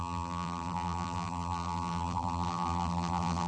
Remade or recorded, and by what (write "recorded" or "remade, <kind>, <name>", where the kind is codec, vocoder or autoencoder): remade, vocoder, BigVGAN v2